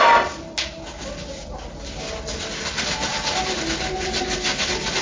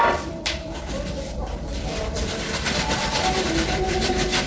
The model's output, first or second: second